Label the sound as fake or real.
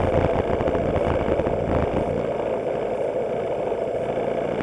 real